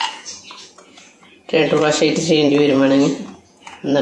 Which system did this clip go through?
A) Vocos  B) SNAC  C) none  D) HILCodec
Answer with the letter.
A